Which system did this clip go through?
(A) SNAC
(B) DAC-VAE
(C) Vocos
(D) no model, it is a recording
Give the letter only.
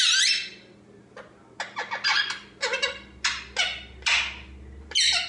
D